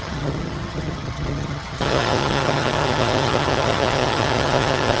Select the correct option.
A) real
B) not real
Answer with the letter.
B